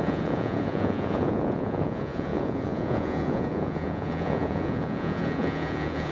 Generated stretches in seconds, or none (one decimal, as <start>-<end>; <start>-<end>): 0.0-6.1